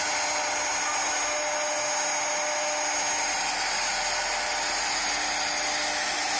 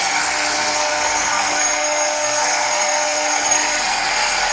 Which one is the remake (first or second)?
second